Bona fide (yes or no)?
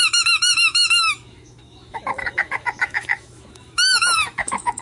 no